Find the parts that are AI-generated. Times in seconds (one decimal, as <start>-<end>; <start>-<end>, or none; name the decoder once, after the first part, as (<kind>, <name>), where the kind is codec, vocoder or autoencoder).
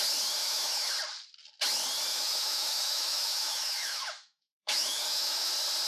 0.4-0.9 (autoencoder, DAC-VAE); 2.1-5.5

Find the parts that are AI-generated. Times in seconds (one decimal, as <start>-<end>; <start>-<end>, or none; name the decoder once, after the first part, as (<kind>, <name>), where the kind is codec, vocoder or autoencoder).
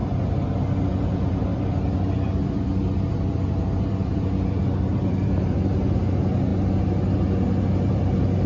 1.0-6.5 (vocoder, BigVGAN v2); 7.9-8.5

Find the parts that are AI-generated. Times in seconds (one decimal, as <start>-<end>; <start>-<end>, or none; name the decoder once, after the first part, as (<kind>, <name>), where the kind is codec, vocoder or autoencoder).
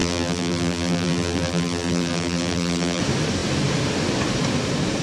0.0-3.0 (vocoder, BigVGAN v2)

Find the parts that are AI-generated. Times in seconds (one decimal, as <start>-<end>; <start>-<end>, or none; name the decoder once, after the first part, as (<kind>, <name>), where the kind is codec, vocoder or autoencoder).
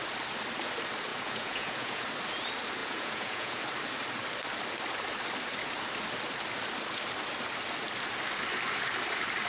1.1-2.0 (vocoder, Vocos); 2.8-3.6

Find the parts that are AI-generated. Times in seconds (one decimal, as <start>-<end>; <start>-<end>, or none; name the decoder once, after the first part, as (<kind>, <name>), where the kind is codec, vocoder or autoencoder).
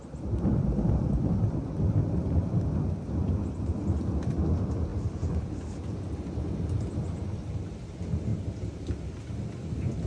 none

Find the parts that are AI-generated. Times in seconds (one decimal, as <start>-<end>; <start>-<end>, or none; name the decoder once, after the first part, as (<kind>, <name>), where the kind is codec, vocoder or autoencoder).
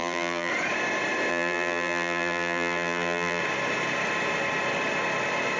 0.0-0.5 (vocoder, BigVGAN v2); 1.3-3.4